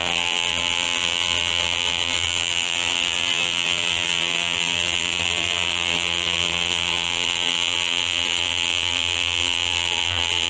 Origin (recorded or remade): remade